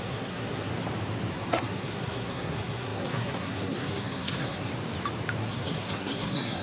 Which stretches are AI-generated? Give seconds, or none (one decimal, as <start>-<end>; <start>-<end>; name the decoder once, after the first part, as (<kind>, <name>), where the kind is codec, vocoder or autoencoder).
0.0-0.7 (codec, SNAC); 1.3-4.7; 5.4-6.6